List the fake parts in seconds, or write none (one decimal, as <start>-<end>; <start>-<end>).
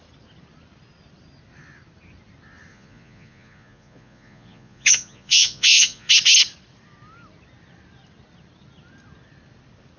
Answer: 2.7-6.1